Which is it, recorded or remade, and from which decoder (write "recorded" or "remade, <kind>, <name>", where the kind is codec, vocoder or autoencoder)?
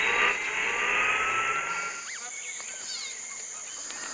recorded